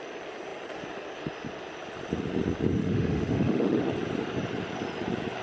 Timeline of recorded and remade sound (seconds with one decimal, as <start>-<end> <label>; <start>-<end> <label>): 0.0-2.8 recorded; 2.8-3.8 remade; 3.8-5.4 recorded